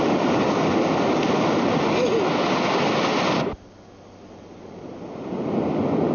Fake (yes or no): no